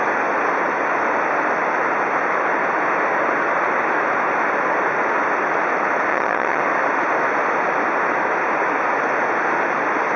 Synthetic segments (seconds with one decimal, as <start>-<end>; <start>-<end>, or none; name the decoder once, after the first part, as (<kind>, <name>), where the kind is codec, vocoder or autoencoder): 6.1-6.6 (vocoder, HiFi-GAN)